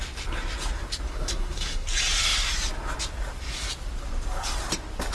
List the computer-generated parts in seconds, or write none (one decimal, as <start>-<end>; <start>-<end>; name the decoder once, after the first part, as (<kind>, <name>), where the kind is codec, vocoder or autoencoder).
1.1-1.9 (codec, SNAC)